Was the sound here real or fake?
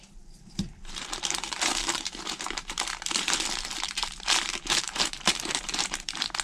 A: fake